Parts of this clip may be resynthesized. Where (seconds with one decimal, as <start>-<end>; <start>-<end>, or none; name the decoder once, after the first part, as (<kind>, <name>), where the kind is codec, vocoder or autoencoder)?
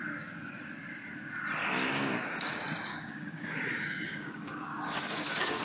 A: 1.6-2.5 (codec, DAC); 2.9-5.6